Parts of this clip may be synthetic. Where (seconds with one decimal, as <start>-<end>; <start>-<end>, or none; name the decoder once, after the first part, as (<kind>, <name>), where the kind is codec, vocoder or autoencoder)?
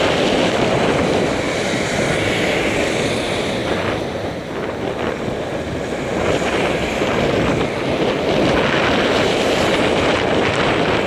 none